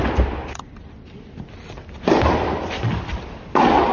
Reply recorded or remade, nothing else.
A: recorded